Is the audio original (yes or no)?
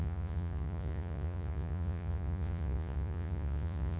no